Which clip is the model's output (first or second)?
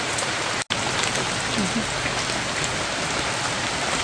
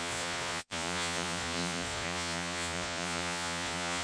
second